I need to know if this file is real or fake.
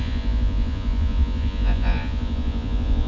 fake